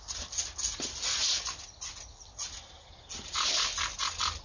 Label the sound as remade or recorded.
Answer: recorded